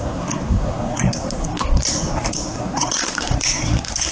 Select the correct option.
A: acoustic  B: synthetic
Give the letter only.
B